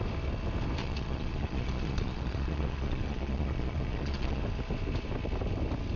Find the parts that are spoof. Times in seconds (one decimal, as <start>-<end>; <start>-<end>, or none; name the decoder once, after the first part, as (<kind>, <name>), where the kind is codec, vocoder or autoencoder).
0.8-4.4 (vocoder, Vocos)